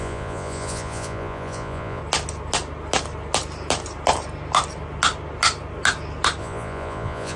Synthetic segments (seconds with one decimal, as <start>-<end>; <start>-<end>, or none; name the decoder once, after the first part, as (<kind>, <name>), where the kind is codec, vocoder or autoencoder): 0.0-2.0 (vocoder, Vocos); 6.4-7.4